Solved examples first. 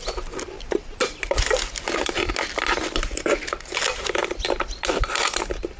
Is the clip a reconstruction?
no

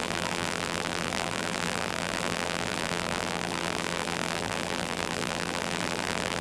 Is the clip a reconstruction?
yes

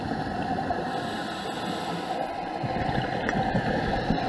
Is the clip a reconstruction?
no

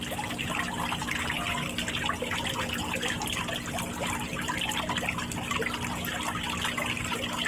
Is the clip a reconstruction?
no